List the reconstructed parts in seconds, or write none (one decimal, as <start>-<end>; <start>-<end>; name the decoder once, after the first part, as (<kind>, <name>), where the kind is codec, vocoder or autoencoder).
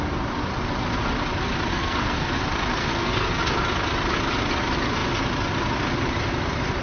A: 1.7-2.4 (codec, SNAC); 2.8-3.4